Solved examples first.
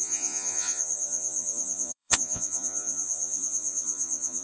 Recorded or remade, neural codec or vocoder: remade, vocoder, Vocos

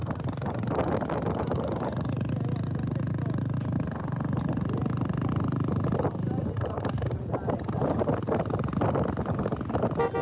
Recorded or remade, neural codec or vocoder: recorded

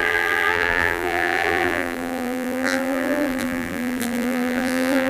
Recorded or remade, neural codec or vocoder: remade, vocoder, BigVGAN v2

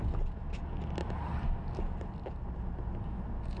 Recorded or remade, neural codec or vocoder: recorded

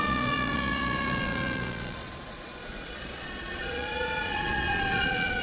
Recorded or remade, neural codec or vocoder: remade, vocoder, Vocos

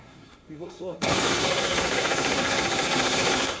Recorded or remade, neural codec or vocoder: remade, codec, SNAC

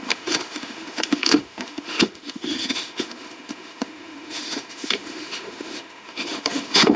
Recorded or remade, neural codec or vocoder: remade, autoencoder, DAC-VAE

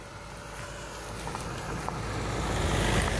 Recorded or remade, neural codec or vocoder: recorded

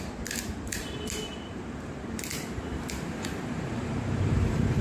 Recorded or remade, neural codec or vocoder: remade, vocoder, BigVGAN v2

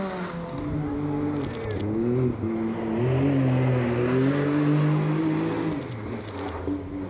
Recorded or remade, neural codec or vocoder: recorded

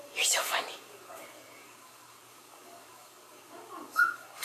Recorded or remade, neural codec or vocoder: remade, codec, DAC